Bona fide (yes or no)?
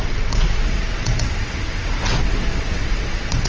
no